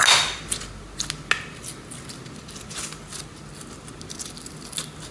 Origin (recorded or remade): recorded